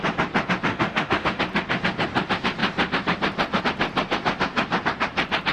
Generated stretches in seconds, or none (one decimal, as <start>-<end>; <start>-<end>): 0.7-1.4